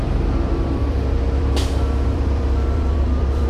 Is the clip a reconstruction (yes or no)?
yes